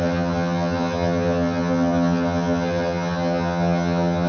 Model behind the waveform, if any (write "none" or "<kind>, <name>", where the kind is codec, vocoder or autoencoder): vocoder, HiFi-GAN